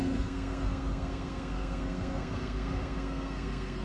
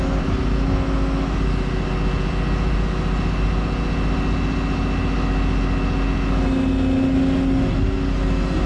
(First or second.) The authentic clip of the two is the second